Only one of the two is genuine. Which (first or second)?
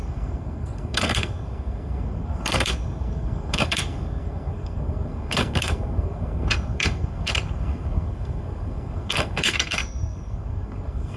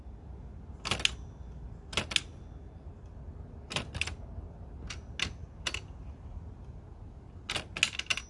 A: second